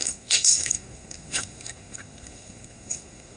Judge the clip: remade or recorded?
remade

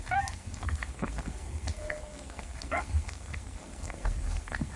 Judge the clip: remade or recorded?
remade